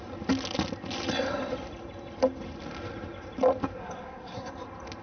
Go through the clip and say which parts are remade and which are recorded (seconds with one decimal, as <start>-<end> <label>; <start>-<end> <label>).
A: 0.0-3.8 recorded; 3.8-4.5 remade; 4.5-5.0 recorded

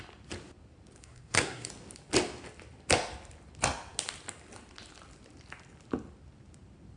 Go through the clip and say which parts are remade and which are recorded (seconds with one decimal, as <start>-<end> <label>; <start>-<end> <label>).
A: 0.0-1.0 recorded; 1.0-1.7 remade; 1.7-7.0 recorded